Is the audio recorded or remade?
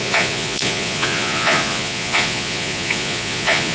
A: remade